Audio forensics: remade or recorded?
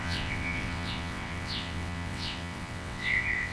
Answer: remade